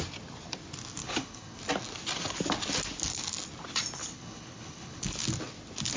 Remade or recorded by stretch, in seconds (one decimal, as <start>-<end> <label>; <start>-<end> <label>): 0.0-1.0 recorded; 1.0-1.6 remade; 1.6-4.0 recorded; 4.0-5.2 remade; 5.2-6.0 recorded